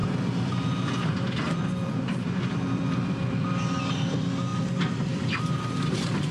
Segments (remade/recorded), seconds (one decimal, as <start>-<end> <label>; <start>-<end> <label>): 0.0-3.8 remade; 3.8-4.5 recorded; 4.5-6.3 remade